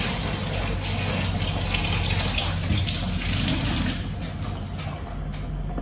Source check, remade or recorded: recorded